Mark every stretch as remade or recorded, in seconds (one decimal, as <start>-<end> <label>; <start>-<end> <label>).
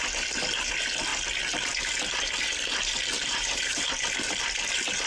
0.0-3.2 recorded; 3.2-3.9 remade; 3.9-5.1 recorded